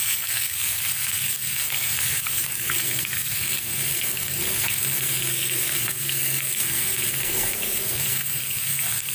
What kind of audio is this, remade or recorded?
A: remade